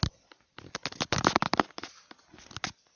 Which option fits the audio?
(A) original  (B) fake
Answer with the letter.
A